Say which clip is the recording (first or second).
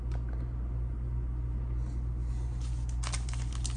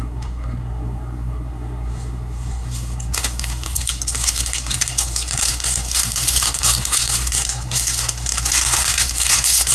first